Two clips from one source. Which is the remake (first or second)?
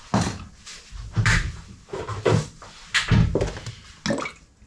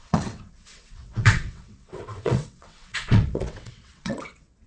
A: second